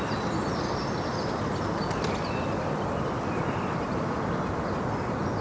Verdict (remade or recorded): recorded